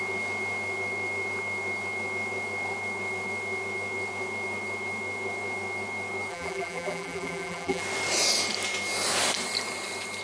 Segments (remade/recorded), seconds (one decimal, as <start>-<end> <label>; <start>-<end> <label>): 0.0-6.3 recorded; 6.3-7.8 remade; 7.8-10.2 recorded

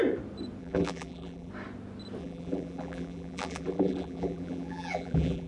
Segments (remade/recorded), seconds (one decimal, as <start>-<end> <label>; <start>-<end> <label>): 0.0-0.6 recorded; 0.6-1.5 remade; 1.5-2.2 recorded; 2.2-5.5 remade

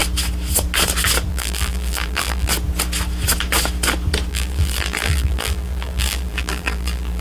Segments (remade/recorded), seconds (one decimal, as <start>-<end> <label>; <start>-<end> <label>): 0.0-1.3 recorded; 1.3-2.5 remade; 2.5-4.3 recorded; 4.3-7.2 remade

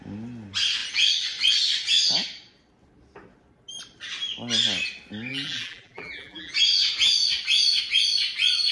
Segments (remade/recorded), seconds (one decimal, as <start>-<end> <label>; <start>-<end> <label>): 0.0-5.3 recorded; 5.3-6.5 remade; 6.5-8.7 recorded

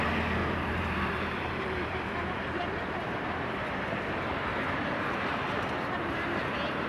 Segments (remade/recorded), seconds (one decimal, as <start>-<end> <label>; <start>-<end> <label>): 0.0-0.4 recorded; 0.4-3.3 remade; 3.3-4.5 recorded; 4.5-6.9 remade

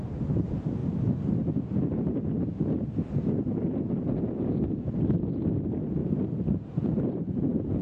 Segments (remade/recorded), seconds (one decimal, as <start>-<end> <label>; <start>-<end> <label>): 0.0-6.0 recorded; 6.0-7.8 remade